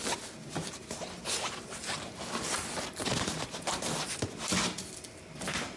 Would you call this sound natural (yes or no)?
yes